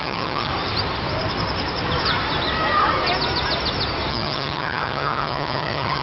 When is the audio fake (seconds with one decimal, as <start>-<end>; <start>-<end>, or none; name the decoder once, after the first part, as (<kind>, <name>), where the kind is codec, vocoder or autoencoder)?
0.0-0.5 (vocoder, HiFi-GAN); 4.1-6.0

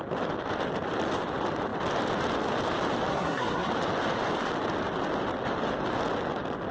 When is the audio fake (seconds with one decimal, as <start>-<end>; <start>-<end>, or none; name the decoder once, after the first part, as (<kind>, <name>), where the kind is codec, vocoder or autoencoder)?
3.1-3.7 (codec, SNAC)

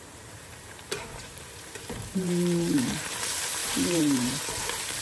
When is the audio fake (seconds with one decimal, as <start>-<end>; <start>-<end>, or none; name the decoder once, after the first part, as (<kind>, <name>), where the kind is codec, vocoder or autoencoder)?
0.0-5.0 (vocoder, BigVGAN v2)

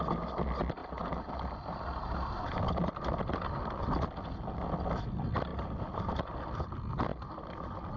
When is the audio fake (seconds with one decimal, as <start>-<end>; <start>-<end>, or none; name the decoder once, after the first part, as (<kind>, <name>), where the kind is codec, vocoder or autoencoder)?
0.8-1.3 (vocoder, BigVGAN v2); 5.5-6.1

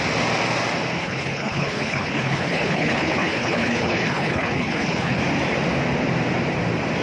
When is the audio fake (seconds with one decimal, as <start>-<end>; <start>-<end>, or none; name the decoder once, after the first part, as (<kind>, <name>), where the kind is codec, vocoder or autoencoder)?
1.0-5.2 (codec, HILCodec)